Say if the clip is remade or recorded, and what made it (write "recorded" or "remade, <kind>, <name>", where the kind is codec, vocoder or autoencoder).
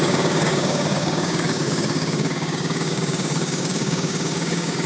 remade, codec, DAC